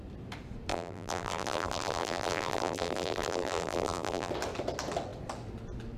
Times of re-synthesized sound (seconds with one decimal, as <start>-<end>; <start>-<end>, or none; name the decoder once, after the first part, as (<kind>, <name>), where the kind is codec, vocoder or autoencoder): 0.7-4.3 (vocoder, BigVGAN v2)